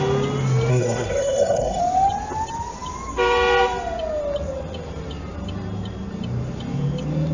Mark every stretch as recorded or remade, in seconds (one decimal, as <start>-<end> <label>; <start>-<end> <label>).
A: 0.0-0.7 recorded; 0.7-1.8 remade; 1.8-7.3 recorded

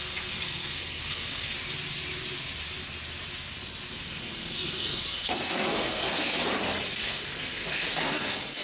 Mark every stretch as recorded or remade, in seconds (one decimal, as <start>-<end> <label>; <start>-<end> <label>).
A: 0.0-1.5 remade; 1.5-3.9 recorded; 3.9-6.5 remade; 6.5-7.0 recorded; 7.0-8.6 remade

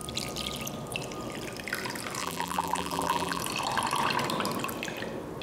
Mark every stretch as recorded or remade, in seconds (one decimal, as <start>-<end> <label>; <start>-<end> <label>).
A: 0.0-2.2 recorded; 2.2-3.4 remade; 3.4-5.4 recorded